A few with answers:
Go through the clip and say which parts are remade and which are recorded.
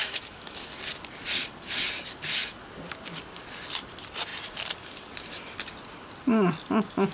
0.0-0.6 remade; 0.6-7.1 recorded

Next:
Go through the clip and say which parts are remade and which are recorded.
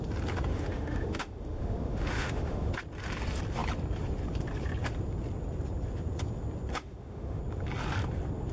0.0-0.5 recorded; 0.5-2.7 remade; 2.7-6.7 recorded; 6.7-7.4 remade; 7.4-8.5 recorded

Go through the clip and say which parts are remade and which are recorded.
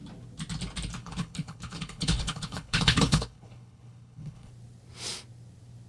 0.0-1.0 recorded; 1.0-4.5 remade; 4.5-5.9 recorded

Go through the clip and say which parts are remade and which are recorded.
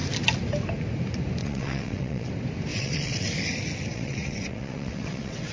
0.0-1.4 recorded; 1.4-2.3 remade; 2.3-2.7 recorded; 2.7-3.3 remade; 3.3-3.9 recorded; 3.9-5.5 remade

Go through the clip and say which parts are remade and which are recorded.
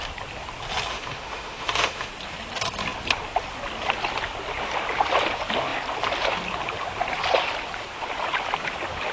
0.0-0.9 recorded; 0.9-2.1 remade; 2.1-9.1 recorded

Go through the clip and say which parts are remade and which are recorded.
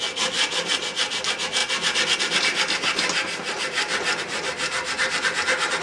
0.0-5.8 recorded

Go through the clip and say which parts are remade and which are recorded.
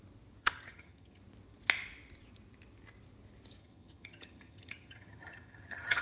0.0-0.4 recorded; 0.4-1.2 remade; 1.2-3.6 recorded; 3.6-6.0 remade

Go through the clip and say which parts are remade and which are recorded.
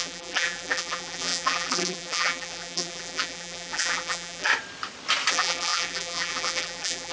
0.0-4.5 remade; 4.5-5.3 recorded; 5.3-7.1 remade